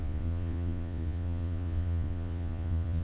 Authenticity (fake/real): fake